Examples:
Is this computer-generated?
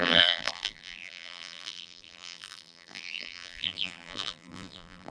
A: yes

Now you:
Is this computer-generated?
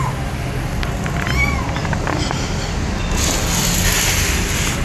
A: no